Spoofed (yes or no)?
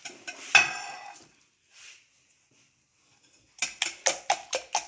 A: no